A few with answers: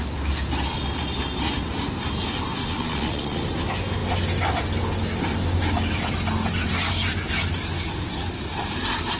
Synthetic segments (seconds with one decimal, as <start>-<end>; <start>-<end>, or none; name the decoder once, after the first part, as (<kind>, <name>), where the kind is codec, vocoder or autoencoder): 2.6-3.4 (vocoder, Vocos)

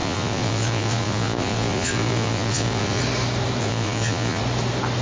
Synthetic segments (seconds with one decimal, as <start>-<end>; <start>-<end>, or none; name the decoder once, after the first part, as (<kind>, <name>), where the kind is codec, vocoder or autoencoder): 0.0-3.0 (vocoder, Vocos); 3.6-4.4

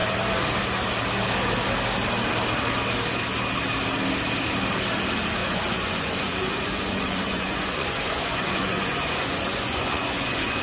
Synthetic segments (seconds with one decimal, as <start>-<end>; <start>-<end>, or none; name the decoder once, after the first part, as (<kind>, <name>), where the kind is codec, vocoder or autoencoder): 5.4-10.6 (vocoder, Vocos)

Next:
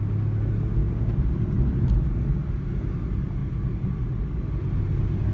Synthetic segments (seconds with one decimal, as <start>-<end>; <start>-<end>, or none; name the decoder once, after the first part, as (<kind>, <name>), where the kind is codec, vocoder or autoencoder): none

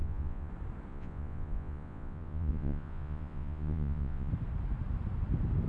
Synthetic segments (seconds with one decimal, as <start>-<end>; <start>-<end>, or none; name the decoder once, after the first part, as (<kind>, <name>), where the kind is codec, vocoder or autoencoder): 0.0-0.5 (vocoder, Vocos); 0.9-4.3